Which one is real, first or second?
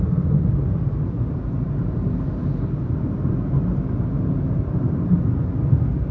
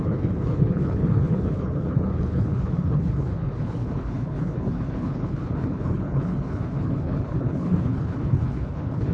first